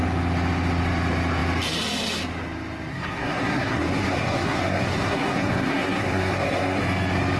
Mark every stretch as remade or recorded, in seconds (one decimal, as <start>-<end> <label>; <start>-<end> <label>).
0.0-2.9 recorded; 2.9-6.8 remade; 6.8-7.4 recorded